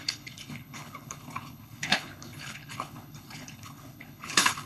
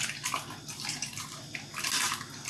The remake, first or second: first